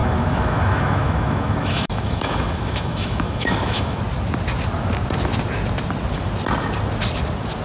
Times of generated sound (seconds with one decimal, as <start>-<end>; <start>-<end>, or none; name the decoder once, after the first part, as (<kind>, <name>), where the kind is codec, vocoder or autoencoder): 0.0-4.0 (autoencoder, DAC-VAE)